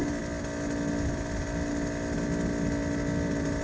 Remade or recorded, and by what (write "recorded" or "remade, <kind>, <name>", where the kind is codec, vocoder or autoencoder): recorded